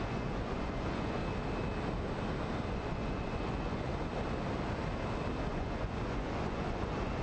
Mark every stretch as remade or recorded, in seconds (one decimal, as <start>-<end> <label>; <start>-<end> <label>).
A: 0.0-1.2 remade; 1.2-2.7 recorded; 2.7-3.9 remade; 3.9-5.5 recorded; 5.5-7.2 remade